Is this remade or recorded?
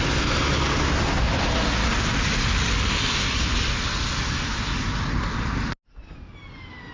recorded